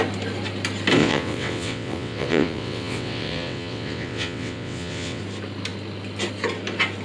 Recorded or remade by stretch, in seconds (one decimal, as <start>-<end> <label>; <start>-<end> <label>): 0.0-1.0 recorded; 1.0-5.2 remade; 5.2-7.0 recorded